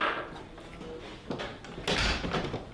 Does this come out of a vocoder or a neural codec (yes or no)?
no